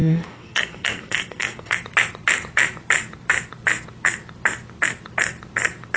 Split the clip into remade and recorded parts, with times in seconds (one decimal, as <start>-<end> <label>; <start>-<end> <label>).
0.0-1.8 remade; 1.8-6.0 recorded